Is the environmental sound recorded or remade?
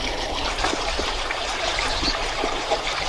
remade